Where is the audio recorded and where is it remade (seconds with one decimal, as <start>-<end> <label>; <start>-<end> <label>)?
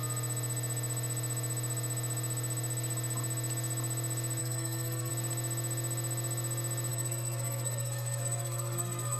0.0-4.4 recorded; 4.4-5.1 remade; 5.1-6.9 recorded; 6.9-9.2 remade